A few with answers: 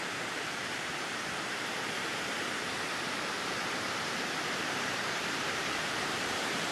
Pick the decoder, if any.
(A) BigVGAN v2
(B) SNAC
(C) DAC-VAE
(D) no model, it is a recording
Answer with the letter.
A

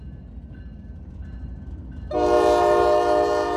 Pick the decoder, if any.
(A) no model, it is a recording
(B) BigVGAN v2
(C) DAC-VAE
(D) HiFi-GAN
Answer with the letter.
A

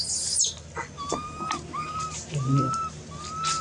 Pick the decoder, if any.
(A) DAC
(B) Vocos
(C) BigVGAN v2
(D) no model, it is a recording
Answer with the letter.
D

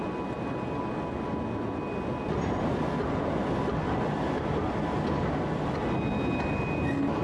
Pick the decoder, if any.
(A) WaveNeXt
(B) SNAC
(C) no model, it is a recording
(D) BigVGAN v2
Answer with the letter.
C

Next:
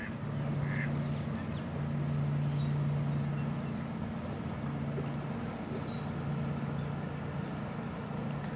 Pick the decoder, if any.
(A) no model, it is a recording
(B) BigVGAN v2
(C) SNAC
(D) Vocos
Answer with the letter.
A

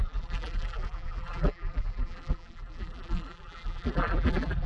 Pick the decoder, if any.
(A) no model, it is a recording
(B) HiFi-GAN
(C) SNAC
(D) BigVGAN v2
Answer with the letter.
D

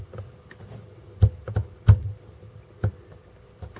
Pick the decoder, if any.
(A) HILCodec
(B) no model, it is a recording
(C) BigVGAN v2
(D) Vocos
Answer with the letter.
B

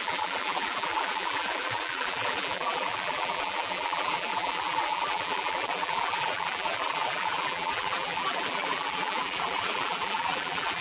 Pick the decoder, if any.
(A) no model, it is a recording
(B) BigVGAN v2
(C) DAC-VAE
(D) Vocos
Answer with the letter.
B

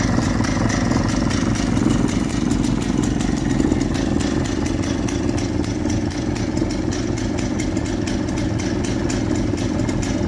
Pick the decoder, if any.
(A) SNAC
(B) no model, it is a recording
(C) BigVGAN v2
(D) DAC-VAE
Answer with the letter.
B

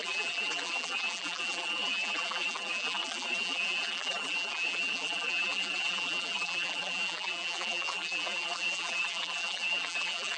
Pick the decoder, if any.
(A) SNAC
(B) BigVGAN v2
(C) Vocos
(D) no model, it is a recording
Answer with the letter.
B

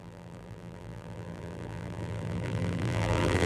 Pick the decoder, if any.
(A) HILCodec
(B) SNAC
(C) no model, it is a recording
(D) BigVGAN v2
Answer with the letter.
D